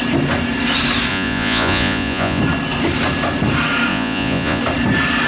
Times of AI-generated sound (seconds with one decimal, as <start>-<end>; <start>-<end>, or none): 1.1-2.4; 3.9-4.6